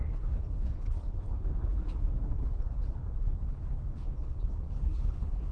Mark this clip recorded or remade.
remade